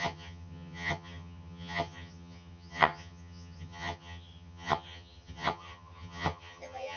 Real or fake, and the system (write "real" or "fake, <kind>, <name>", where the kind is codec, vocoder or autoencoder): fake, vocoder, HiFi-GAN